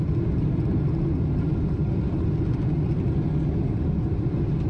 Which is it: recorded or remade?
recorded